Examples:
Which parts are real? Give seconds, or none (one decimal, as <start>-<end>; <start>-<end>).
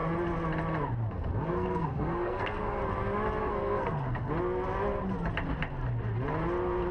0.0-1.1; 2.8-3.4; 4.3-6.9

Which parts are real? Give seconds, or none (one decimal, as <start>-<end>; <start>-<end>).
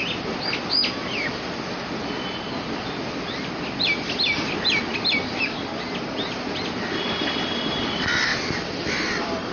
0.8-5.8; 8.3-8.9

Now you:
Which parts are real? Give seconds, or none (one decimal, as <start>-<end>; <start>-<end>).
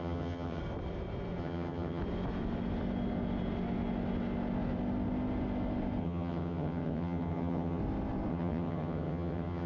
0.6-1.4; 2.0-6.0; 7.8-8.3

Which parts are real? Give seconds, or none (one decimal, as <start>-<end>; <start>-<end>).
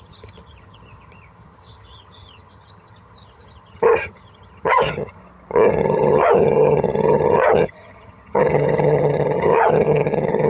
5.2-5.8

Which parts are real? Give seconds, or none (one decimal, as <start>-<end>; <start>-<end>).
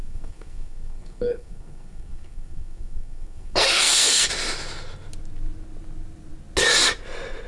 4.3-7.5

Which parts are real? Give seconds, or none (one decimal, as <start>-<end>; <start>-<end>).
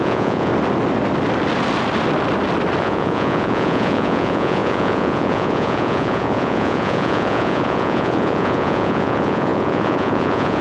0.5-2.8